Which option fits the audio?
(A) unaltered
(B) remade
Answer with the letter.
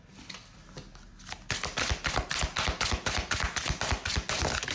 A